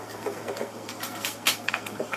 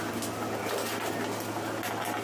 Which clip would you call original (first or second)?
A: second